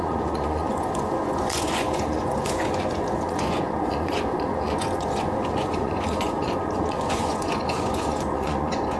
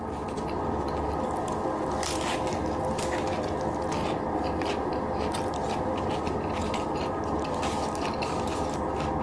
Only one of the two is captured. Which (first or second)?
second